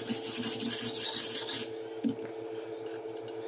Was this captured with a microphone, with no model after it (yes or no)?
yes